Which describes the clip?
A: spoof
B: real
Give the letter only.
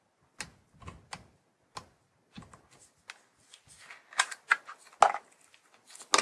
B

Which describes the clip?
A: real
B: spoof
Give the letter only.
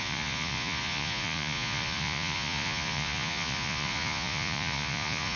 B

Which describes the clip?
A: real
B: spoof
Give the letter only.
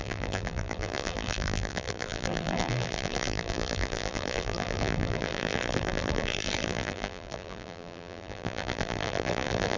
B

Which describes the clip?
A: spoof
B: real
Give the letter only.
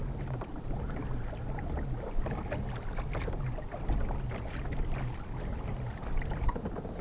B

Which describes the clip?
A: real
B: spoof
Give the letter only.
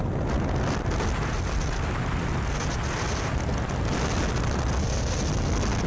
A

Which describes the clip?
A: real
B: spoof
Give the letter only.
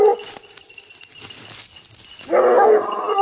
A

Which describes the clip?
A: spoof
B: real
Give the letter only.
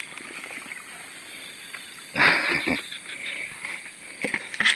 B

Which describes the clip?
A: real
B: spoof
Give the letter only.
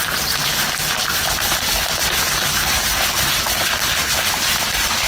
B